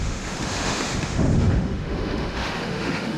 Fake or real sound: fake